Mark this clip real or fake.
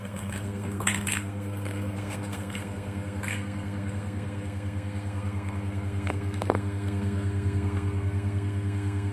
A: fake